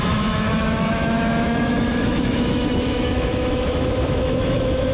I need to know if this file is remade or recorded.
remade